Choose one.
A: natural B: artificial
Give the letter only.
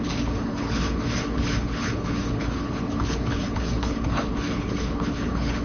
B